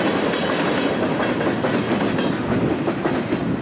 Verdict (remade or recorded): recorded